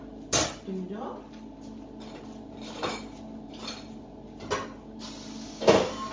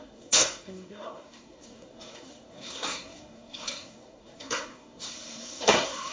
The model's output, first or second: second